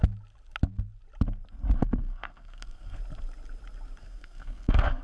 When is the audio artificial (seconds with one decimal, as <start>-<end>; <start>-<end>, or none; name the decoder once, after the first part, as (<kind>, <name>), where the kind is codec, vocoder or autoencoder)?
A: 1.8-3.0 (codec, SNAC); 4.0-5.0